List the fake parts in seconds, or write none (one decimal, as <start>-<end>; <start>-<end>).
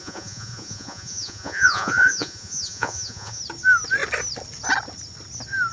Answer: 0.0-3.4